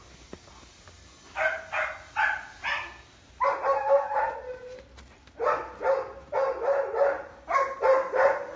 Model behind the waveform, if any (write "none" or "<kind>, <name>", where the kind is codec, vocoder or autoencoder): none